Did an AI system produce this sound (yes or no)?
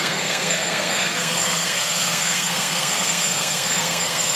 yes